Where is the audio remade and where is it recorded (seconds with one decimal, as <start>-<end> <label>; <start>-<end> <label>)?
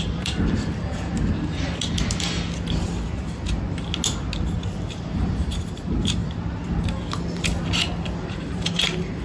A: 0.0-1.1 remade; 1.1-4.9 recorded; 4.9-6.2 remade; 6.2-8.2 recorded; 8.2-9.2 remade